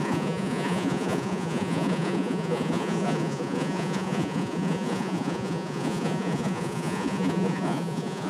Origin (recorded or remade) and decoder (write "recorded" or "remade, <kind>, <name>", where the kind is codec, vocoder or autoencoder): remade, vocoder, Vocos